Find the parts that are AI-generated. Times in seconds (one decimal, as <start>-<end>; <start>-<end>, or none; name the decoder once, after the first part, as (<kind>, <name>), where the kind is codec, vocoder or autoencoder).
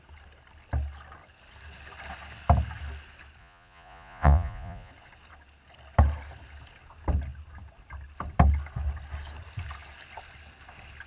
3.4-4.9 (vocoder, Vocos)